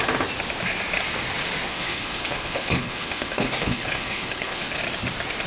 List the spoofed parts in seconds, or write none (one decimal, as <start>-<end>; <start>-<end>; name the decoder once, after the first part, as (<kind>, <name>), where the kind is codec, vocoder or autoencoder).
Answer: 1.7-4.8 (codec, HILCodec)